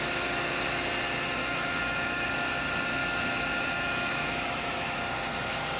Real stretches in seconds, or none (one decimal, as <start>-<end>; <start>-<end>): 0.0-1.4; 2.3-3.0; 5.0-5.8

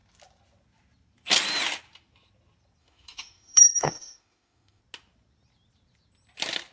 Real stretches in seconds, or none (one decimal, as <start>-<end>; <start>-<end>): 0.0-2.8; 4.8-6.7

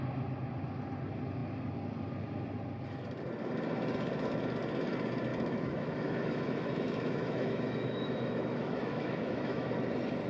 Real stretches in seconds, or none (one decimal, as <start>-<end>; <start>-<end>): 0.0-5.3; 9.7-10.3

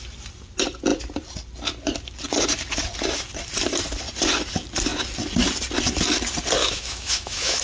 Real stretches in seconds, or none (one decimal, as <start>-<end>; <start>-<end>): 0.0-6.6